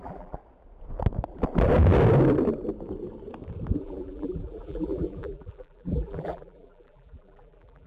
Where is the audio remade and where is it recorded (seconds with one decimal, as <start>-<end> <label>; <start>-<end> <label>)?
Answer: 0.0-0.4 remade; 0.4-3.8 recorded; 3.8-7.9 remade